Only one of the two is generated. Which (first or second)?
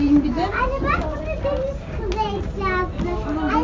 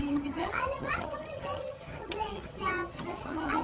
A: second